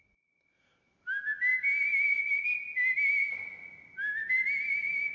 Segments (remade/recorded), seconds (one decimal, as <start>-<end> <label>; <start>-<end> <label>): 0.0-5.1 recorded